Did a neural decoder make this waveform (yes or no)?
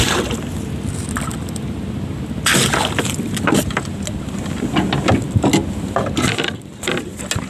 no